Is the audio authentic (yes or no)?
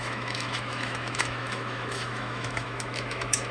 no